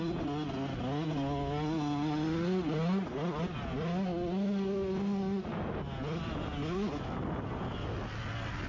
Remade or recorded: recorded